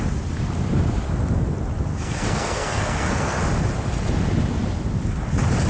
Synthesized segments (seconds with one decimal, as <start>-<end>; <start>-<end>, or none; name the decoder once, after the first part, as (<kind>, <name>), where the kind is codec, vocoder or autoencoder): 1.9-3.4 (codec, SNAC)